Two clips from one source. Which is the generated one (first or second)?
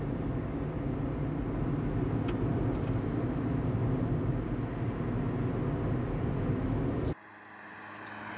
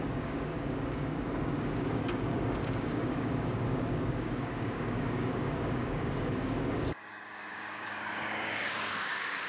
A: second